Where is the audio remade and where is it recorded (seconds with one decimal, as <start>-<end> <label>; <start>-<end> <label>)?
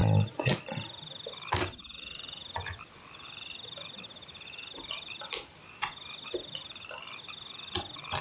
0.0-8.2 recorded